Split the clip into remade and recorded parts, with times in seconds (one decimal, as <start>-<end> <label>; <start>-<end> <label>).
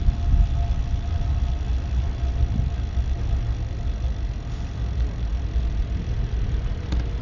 0.0-7.2 recorded